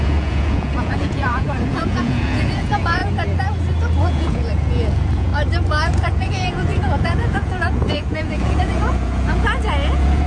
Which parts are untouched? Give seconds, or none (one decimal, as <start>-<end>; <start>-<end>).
3.0-4.0; 5.3-5.9